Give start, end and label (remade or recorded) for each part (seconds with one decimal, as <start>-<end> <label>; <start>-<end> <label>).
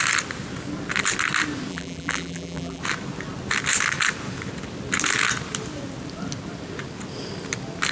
0.0-1.7 recorded; 1.7-2.8 remade; 2.8-7.9 recorded